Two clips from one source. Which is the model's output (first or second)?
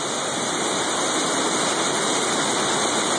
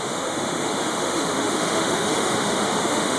second